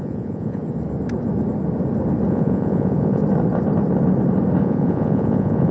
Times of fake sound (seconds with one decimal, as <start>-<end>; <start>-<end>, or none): 0.0-0.6; 2.3-3.2; 4.6-5.7